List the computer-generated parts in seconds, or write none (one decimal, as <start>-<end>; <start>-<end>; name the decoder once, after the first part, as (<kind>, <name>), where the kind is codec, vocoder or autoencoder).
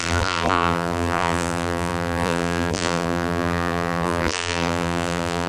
0.0-5.5 (vocoder, BigVGAN v2)